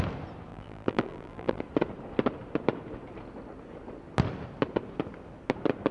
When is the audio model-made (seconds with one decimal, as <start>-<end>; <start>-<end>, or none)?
0.5-1.6